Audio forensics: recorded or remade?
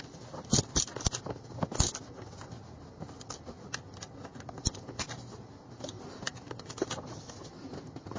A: recorded